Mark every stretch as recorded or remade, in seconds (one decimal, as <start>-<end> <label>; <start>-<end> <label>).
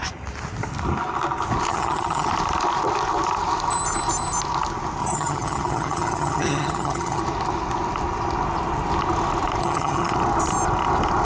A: 0.0-1.7 recorded; 1.7-2.3 remade; 2.3-5.0 recorded; 5.0-7.2 remade; 7.2-9.6 recorded; 9.6-10.1 remade; 10.1-11.2 recorded